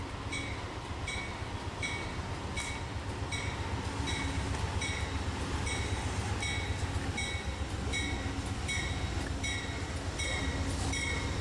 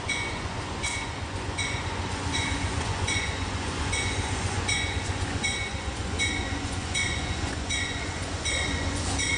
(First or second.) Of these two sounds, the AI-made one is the second